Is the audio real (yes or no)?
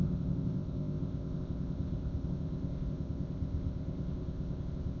no